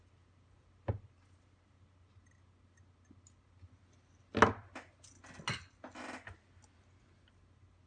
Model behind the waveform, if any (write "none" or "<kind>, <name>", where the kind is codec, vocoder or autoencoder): none